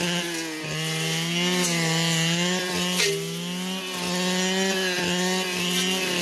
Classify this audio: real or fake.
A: real